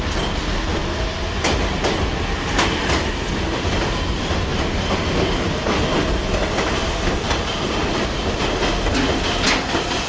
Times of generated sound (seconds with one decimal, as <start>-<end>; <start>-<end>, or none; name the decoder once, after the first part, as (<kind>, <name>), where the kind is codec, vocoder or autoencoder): none